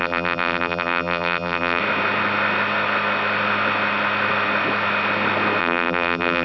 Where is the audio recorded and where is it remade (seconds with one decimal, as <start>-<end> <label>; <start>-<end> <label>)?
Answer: 0.0-1.8 remade; 1.8-5.6 recorded; 5.6-6.4 remade